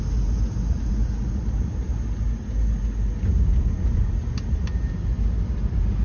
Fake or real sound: real